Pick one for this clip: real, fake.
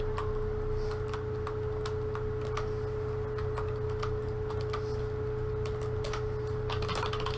real